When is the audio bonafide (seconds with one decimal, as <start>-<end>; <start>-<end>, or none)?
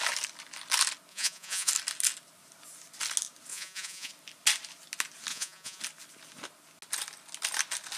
0.0-1.1; 1.7-3.5; 4.1-5.3; 5.8-8.0